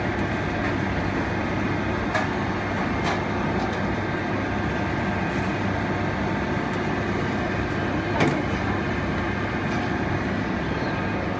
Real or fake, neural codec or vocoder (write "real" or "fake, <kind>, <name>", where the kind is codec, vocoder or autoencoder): real